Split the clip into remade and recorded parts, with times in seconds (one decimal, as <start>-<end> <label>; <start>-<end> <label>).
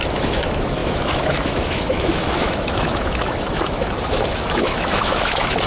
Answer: 0.0-5.7 remade